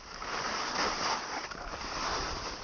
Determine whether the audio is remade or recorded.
recorded